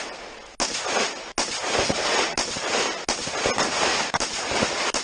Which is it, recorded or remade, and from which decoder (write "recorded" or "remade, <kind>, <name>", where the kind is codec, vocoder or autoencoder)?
recorded